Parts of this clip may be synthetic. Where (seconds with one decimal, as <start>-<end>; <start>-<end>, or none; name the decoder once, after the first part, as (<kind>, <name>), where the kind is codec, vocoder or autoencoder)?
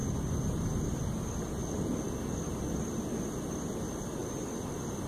none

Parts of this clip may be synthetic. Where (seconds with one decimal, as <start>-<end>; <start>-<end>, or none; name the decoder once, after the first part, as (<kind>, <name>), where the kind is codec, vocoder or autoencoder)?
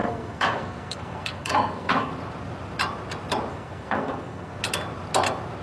0.0-2.1 (codec, SNAC); 3.5-4.6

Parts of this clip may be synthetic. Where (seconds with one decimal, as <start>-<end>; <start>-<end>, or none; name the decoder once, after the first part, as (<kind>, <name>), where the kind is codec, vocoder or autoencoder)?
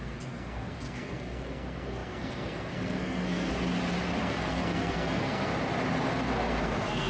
0.0-3.5 (codec, SNAC); 4.2-5.5; 6.1-7.1